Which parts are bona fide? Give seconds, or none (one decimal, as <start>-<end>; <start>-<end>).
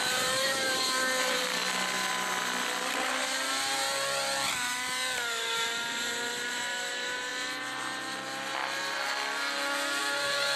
1.6-3.5; 7.3-10.0